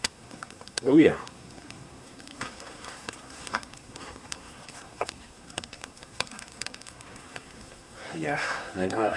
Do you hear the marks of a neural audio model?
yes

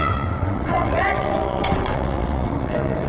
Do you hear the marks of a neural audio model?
yes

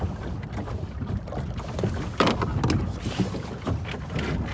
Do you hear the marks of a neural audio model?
no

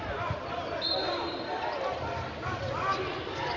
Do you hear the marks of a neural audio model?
no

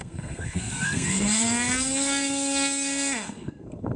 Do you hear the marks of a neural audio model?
yes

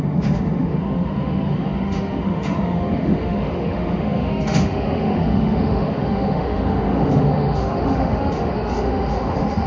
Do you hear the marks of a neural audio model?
yes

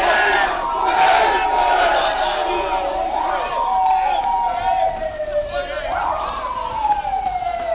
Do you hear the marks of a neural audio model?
no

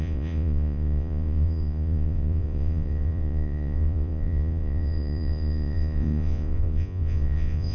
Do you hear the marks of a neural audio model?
yes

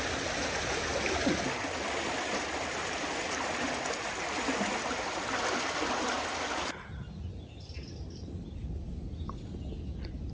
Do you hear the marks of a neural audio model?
no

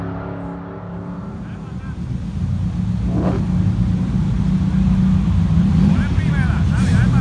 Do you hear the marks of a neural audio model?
no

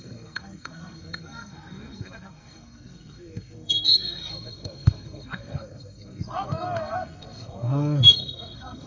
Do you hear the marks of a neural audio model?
yes